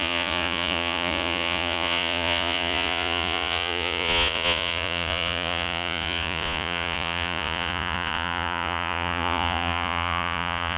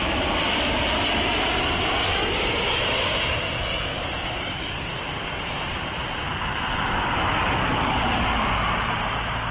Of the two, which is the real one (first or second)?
second